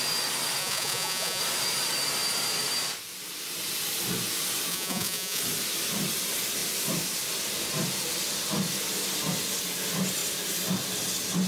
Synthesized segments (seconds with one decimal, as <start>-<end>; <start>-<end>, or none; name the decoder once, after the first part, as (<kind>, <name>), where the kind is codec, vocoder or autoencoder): 0.6-1.4 (vocoder, Vocos); 4.7-5.4